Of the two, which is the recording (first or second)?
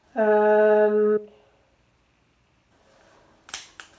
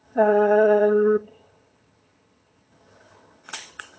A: first